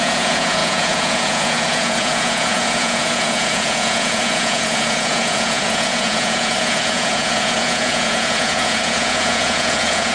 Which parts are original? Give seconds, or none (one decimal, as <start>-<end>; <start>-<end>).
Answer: none